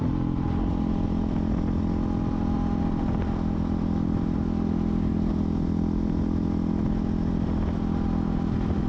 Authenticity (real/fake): real